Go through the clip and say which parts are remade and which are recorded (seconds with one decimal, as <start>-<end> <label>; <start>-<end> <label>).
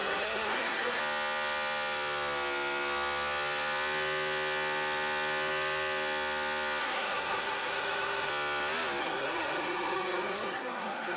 0.0-1.0 remade; 1.0-6.8 recorded; 6.8-8.3 remade; 8.3-9.0 recorded; 9.0-11.2 remade